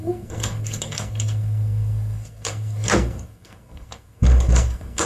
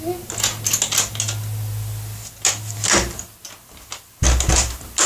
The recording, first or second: second